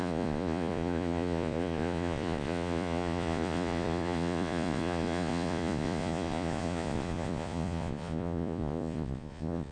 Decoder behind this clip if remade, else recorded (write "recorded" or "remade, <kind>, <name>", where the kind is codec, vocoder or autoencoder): remade, vocoder, Vocos